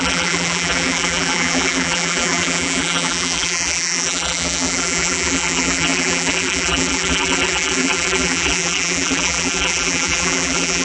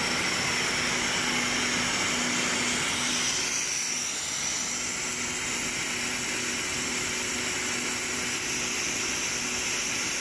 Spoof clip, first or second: first